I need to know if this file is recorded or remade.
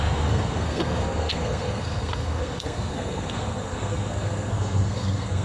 remade